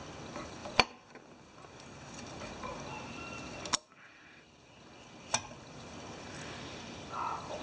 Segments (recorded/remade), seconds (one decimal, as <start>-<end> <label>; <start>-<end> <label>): 0.0-0.6 recorded; 0.6-1.1 remade; 1.1-7.6 recorded